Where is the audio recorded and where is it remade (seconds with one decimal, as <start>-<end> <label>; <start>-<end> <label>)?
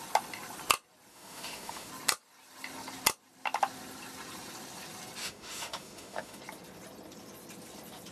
0.0-1.1 recorded; 1.1-1.9 remade; 1.9-5.2 recorded; 5.2-6.4 remade; 6.4-8.1 recorded